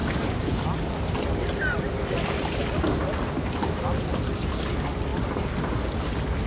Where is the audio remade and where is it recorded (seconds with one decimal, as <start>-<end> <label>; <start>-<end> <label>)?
0.0-6.5 recorded